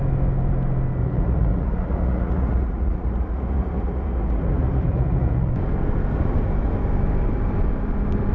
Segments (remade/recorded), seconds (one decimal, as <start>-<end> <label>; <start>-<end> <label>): 0.0-1.0 recorded; 1.0-5.5 remade; 5.5-8.3 recorded